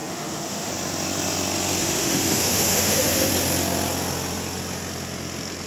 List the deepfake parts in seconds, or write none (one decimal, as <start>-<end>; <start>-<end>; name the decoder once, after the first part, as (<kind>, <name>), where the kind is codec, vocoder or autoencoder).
0.0-0.7 (autoencoder, DAC-VAE); 1.8-3.3

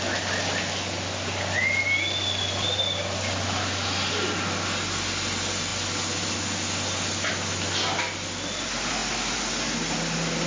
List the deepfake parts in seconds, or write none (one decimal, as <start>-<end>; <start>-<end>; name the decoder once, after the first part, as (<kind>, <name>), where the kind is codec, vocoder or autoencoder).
none

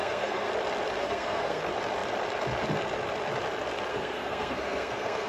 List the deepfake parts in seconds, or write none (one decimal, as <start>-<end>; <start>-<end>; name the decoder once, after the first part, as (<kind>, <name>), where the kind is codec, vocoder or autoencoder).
0.0-0.5 (codec, SNAC); 1.0-1.6; 3.9-5.3

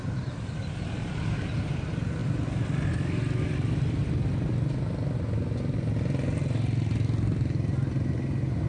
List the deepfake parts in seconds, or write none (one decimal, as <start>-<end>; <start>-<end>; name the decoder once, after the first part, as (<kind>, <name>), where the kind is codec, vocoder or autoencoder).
none

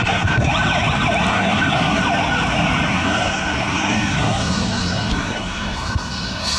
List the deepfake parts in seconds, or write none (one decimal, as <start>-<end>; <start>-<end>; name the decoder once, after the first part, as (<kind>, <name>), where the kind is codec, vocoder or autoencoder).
0.0-0.5 (codec, SNAC); 1.3-2.0; 2.9-6.6

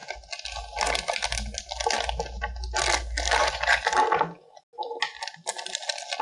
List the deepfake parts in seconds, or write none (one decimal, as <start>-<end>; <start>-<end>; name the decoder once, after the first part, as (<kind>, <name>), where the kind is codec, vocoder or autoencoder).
none